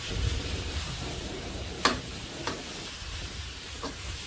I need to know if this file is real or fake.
fake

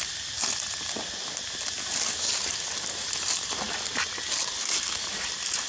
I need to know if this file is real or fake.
real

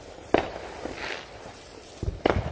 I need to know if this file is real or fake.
real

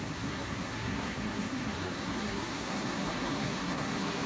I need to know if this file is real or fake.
fake